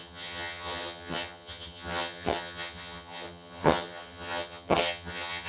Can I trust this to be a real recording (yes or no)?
no